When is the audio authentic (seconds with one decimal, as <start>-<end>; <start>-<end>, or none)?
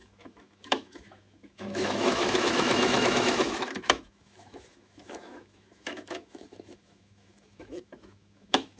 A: none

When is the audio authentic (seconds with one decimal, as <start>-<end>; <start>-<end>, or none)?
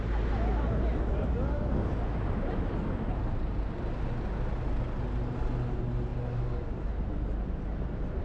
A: 0.0-8.2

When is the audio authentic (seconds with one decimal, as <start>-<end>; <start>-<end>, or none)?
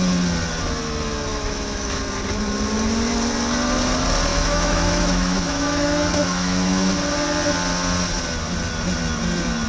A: 0.0-1.3; 2.0-4.3; 6.9-9.7